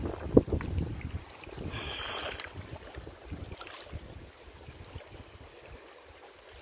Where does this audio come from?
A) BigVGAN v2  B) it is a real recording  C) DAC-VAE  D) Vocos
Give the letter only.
B